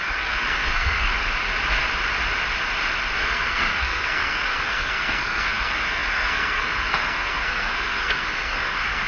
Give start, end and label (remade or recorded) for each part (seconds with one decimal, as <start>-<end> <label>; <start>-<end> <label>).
0.0-1.1 remade; 1.1-3.2 recorded; 3.2-9.1 remade